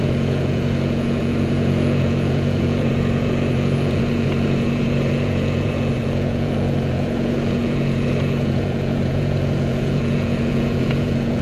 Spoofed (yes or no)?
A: yes